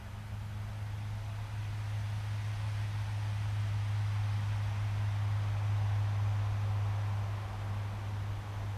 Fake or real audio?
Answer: real